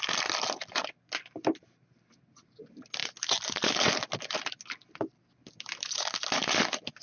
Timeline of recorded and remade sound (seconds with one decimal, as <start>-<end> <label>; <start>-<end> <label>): 0.0-7.0 recorded